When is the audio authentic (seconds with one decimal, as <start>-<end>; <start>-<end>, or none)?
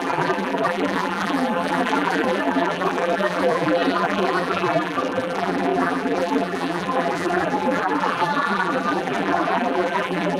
none